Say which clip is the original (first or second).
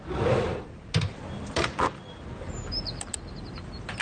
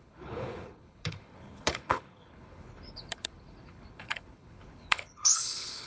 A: first